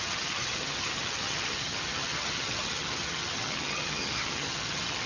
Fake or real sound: fake